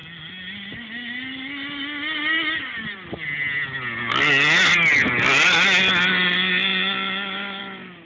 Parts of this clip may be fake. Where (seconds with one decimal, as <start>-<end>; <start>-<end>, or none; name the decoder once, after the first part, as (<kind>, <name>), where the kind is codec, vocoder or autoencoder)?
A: none